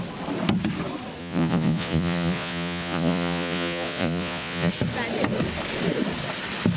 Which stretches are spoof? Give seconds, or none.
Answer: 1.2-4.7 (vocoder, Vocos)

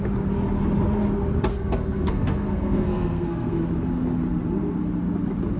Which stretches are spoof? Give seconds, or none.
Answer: 1.5-3.6 (codec, SNAC)

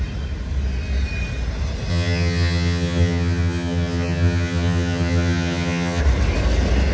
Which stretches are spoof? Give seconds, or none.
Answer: 1.9-6.0 (vocoder, HiFi-GAN)

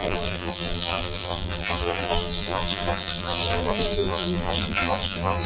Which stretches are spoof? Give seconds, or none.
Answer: 0.0-5.5 (vocoder, BigVGAN v2)

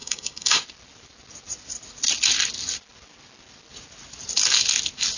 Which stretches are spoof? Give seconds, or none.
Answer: 0.0-0.6 (codec, DAC)

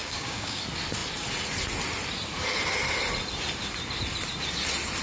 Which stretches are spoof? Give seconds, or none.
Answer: 0.0-0.6 (codec, DAC)

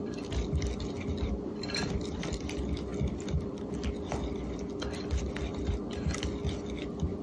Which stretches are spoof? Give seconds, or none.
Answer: 0.0-2.4 (vocoder, BigVGAN v2); 2.9-3.6

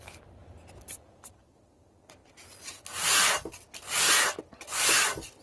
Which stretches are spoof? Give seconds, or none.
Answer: 0.4-1.3 (vocoder, BigVGAN v2)